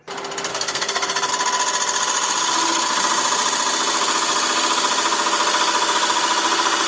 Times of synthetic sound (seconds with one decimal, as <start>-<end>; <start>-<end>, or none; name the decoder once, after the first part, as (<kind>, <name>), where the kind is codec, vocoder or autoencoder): 0.5-1.3 (codec, SNAC)